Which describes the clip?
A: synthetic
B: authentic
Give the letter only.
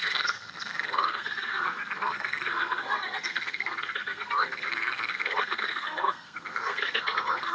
A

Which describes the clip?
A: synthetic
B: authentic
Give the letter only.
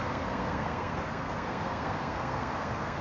A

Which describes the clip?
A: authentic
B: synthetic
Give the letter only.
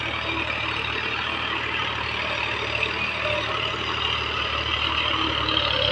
A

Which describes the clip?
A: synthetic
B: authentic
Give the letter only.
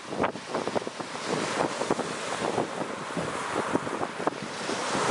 B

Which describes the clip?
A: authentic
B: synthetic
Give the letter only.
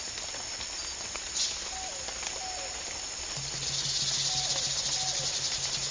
A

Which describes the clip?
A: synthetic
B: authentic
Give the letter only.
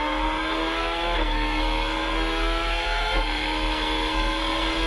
A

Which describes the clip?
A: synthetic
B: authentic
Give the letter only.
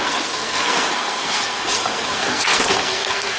A